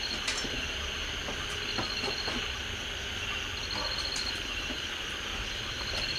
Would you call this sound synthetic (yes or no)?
no